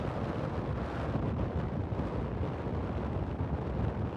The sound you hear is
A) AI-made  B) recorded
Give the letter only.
B